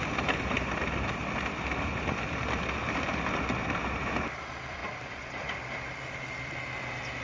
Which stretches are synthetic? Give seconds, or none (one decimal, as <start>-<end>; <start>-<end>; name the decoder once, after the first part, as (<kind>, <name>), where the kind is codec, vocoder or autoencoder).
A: 4.8-6.0 (vocoder, BigVGAN v2)

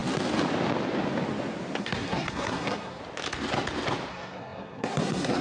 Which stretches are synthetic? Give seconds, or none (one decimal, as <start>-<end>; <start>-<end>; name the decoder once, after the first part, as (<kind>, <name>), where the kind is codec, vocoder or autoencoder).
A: 1.8-3.0 (codec, SNAC); 4.1-5.4

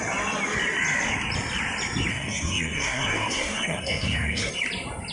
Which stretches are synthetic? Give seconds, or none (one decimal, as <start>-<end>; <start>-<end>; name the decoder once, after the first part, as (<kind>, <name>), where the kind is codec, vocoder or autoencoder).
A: 2.1-4.5 (codec, SNAC)

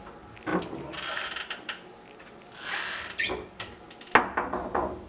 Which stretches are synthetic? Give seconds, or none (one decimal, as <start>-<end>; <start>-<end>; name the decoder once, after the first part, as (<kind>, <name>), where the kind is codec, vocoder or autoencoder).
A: 0.5-3.6 (vocoder, BigVGAN v2)

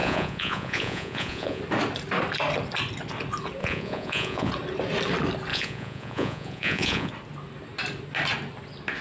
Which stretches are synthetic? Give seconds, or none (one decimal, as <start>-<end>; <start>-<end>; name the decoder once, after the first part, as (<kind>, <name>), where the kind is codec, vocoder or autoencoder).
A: 0.0-1.6 (vocoder, Vocos); 3.6-4.5; 5.5-7.1

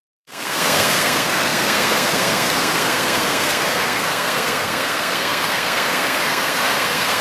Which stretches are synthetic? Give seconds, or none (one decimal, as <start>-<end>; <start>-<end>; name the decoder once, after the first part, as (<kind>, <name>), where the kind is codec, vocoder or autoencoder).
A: 0.0-7.2 (codec, SNAC)

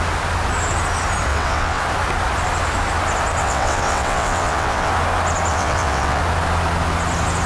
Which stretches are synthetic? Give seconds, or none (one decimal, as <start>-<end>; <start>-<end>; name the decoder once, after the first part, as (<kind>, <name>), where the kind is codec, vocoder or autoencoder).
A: 1.3-1.8 (vocoder, WaveNeXt); 3.4-4.9; 5.5-6.2

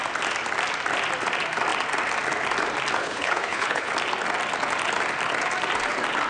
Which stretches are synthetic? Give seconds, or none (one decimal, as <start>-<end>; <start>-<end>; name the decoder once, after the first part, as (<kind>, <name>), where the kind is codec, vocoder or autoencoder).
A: 3.0-3.9 (codec, HILCodec)